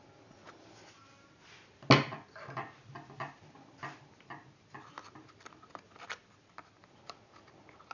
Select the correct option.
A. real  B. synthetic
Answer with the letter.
A